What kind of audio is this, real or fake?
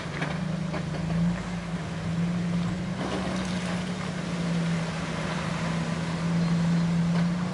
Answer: real